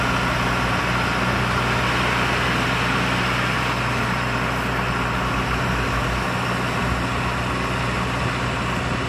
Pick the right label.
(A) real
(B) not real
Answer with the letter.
A